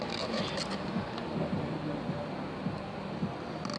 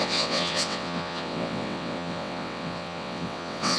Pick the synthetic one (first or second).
second